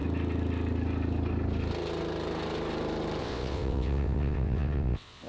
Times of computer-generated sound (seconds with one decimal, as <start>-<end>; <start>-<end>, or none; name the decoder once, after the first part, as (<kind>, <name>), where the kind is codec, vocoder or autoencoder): 3.2-5.3 (vocoder, WaveNeXt)